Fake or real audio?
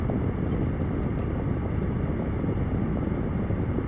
real